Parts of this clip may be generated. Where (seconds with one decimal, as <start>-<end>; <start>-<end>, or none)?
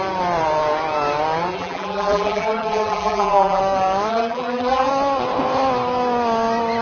1.5-3.6; 4.1-4.9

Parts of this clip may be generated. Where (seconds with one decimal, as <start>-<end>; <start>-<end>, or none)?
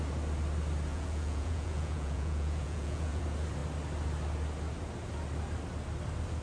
0.9-3.2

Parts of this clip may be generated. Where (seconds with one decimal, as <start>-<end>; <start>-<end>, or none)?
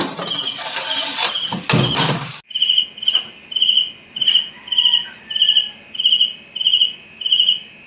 none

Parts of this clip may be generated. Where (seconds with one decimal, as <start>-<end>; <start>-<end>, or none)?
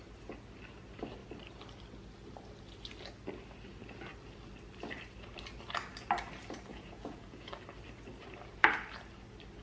6.7-7.5